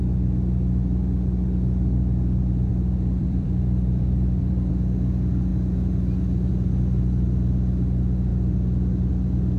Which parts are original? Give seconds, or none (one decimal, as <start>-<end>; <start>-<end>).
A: 0.0-2.7; 4.7-9.6